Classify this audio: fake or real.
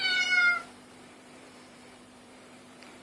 fake